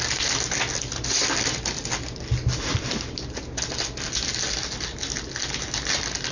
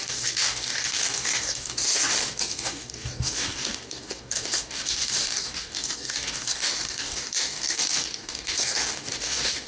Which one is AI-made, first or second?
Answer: second